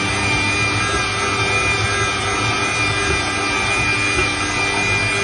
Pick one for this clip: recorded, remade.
recorded